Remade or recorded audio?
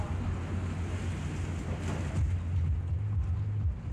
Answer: recorded